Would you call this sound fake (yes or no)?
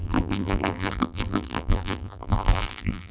yes